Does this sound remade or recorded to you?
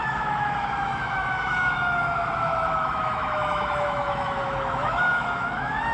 remade